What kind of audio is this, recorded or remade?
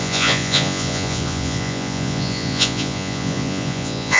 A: remade